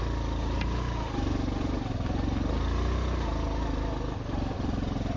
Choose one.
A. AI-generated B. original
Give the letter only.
B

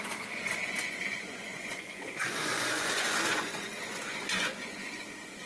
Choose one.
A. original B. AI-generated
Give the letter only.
B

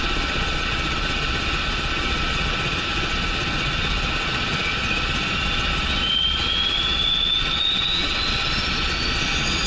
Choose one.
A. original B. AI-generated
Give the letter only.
B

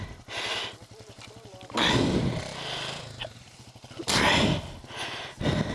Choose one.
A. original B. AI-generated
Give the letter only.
A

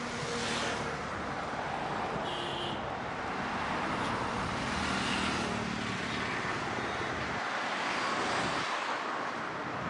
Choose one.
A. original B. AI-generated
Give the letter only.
A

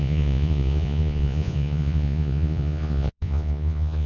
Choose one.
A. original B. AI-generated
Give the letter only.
B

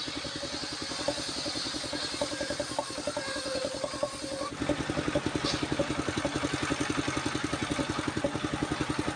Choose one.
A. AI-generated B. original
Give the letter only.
B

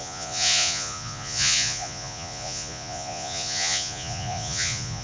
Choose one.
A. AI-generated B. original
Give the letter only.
A